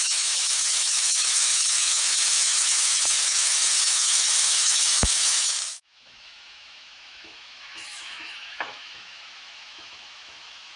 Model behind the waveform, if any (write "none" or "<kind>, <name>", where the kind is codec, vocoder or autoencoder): autoencoder, DAC-VAE